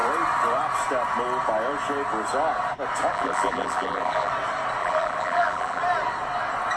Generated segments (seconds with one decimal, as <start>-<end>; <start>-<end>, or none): 3.1-4.3; 4.8-5.8